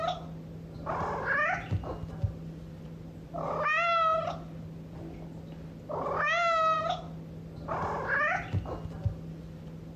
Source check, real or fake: real